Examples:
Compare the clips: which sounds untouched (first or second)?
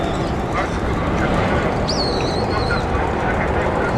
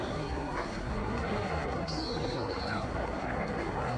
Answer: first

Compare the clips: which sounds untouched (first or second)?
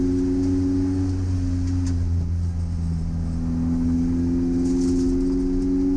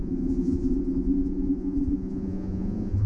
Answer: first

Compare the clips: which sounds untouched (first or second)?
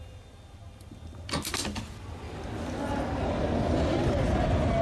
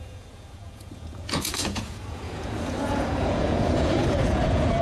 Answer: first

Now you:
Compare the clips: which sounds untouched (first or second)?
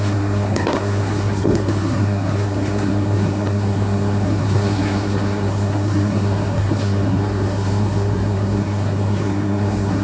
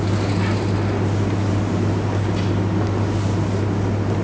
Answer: second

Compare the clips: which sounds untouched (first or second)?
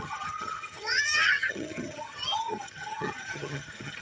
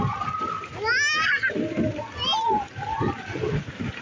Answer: second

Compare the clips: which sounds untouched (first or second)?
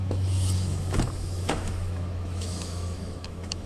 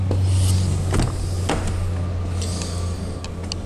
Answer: second